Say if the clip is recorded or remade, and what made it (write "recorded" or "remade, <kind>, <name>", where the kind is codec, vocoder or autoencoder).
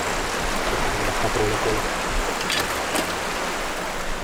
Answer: recorded